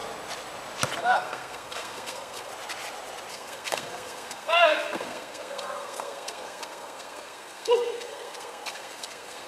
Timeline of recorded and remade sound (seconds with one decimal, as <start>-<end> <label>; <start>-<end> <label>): 0.0-1.0 recorded; 1.0-2.5 remade; 2.5-3.3 recorded; 3.3-9.5 remade